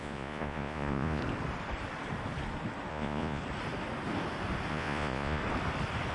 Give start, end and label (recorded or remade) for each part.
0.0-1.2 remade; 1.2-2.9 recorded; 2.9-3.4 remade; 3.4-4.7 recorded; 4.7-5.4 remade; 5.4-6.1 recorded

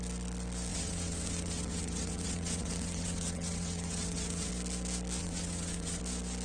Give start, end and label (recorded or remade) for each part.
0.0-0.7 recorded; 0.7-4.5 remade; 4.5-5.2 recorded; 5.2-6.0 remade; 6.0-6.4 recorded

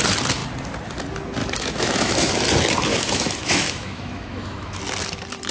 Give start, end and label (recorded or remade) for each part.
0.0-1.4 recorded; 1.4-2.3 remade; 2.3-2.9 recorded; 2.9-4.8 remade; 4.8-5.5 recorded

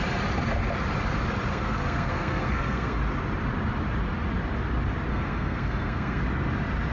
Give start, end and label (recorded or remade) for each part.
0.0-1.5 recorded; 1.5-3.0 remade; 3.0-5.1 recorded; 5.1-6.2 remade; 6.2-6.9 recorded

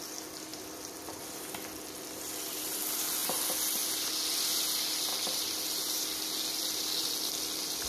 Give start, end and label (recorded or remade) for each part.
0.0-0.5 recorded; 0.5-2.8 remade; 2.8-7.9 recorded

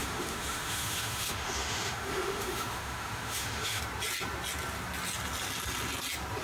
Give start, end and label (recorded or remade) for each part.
0.0-3.8 remade; 3.8-6.4 recorded

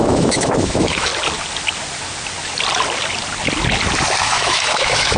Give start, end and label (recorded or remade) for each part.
0.0-1.1 remade; 1.1-4.2 recorded; 4.2-5.2 remade

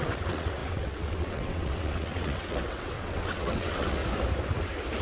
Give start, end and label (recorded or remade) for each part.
0.0-4.0 remade; 4.0-5.0 recorded